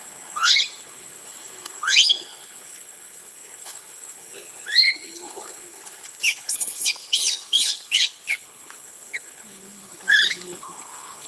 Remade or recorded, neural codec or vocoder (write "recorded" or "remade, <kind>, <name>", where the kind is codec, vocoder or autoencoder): remade, codec, HILCodec